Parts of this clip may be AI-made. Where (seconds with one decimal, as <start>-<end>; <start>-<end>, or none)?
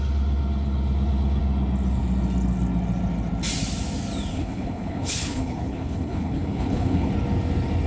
4.3-7.1